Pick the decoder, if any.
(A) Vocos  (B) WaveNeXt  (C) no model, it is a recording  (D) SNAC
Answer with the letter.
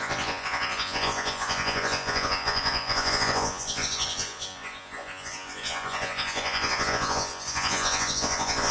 A